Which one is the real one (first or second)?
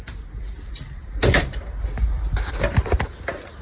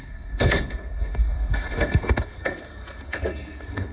first